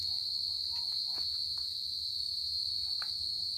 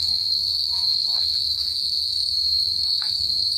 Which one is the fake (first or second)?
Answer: second